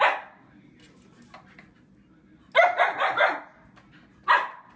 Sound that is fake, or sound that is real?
real